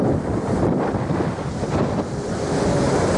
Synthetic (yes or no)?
no